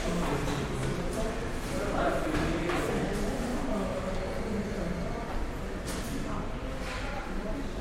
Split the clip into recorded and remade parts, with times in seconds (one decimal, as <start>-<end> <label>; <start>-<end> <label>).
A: 0.0-0.8 remade; 0.8-2.2 recorded; 2.2-3.5 remade; 3.5-7.2 recorded; 7.2-7.8 remade